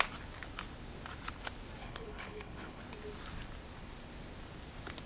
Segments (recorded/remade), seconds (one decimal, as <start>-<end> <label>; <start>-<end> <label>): 0.0-1.8 recorded; 1.8-2.8 remade; 2.8-5.1 recorded